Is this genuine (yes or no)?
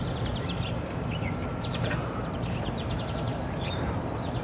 no